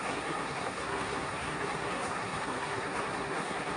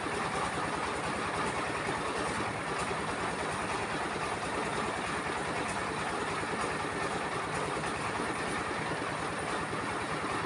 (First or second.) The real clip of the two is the second